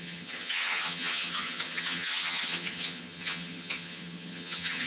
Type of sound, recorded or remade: remade